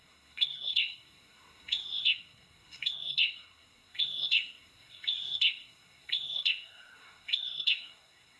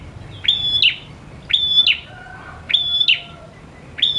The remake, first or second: first